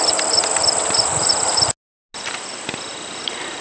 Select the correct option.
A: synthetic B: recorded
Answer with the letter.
B